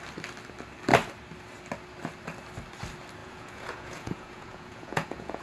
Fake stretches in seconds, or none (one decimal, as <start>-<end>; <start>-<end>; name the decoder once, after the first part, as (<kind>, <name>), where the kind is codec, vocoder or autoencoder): 3.2-5.4 (vocoder, Vocos)